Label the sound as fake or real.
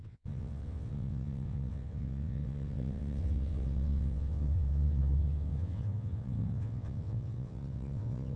fake